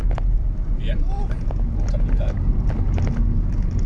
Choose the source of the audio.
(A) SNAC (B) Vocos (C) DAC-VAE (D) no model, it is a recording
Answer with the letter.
D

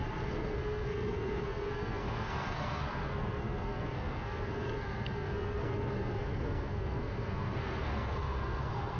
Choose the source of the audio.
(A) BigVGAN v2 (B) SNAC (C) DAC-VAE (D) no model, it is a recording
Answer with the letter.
B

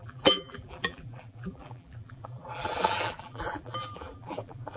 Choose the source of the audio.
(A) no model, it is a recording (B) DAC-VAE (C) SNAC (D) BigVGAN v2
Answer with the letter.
D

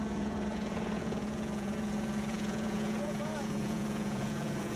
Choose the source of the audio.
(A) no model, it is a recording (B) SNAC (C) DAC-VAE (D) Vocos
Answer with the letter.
D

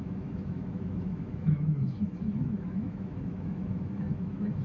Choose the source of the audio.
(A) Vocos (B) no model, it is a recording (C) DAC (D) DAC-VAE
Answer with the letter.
D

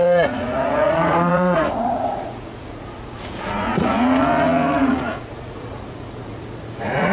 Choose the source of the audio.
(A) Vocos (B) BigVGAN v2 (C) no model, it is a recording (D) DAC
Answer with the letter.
A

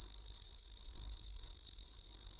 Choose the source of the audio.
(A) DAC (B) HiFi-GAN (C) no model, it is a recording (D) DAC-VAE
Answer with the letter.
A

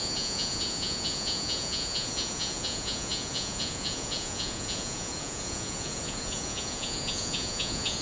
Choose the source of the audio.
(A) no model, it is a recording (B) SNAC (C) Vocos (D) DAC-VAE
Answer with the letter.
C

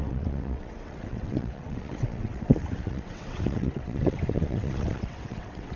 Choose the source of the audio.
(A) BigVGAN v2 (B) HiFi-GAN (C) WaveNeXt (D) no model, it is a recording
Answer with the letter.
C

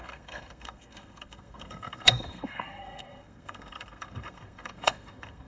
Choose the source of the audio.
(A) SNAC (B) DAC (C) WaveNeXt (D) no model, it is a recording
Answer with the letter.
A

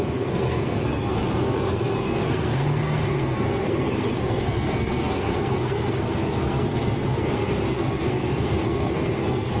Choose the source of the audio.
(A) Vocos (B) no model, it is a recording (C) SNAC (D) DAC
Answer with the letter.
C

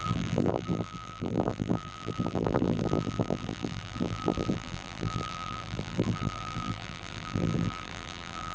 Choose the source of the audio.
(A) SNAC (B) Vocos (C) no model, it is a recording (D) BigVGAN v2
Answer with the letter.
D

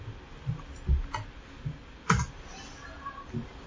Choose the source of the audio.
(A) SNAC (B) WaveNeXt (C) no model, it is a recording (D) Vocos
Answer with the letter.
C